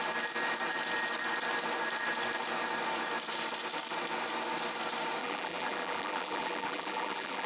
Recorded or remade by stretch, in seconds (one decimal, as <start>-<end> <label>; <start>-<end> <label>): 0.0-5.2 recorded; 5.2-7.5 remade